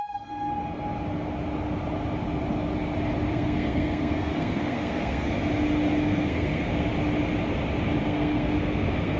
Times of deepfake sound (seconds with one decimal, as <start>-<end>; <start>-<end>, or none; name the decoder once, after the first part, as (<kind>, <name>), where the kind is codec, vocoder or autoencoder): 0.0-0.6 (codec, SNAC); 3.3-5.4; 6.0-6.9; 8.0-9.2